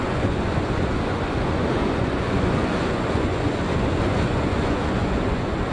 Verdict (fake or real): fake